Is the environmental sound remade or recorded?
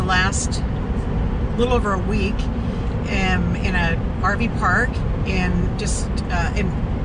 recorded